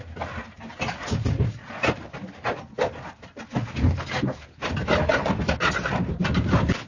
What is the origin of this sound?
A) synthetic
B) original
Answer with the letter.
B